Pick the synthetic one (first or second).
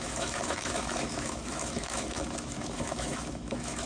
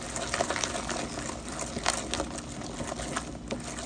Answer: first